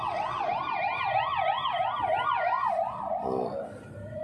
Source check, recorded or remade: recorded